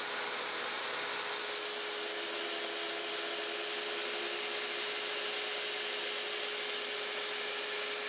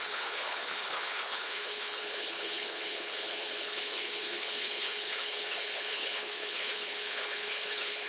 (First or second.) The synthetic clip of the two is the second